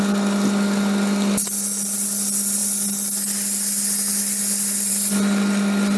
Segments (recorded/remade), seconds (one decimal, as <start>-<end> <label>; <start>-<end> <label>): 0.0-6.0 recorded